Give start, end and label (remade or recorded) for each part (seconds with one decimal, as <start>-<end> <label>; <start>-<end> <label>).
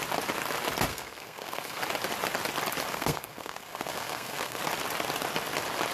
0.0-0.9 recorded; 0.9-1.8 remade; 1.8-2.9 recorded; 2.9-4.6 remade; 4.6-5.9 recorded